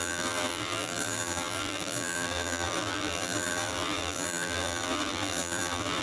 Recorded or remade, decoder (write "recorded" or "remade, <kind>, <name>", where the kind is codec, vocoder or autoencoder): remade, vocoder, BigVGAN v2